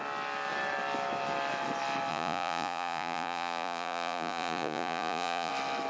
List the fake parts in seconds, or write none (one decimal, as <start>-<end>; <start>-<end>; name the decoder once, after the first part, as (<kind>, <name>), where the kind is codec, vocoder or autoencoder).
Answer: 2.1-5.5 (vocoder, Vocos)